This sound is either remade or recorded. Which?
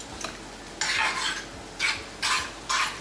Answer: recorded